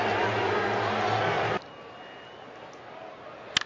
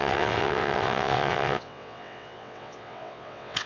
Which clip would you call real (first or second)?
first